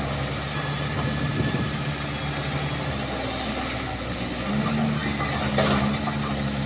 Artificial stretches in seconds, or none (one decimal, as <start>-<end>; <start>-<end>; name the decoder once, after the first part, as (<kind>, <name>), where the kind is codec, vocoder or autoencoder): none